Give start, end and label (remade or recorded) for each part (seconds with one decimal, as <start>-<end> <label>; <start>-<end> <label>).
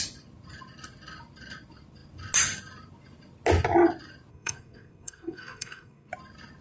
0.0-4.3 recorded; 4.3-6.1 remade; 6.1-6.6 recorded